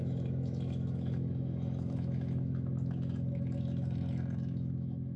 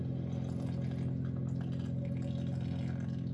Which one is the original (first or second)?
second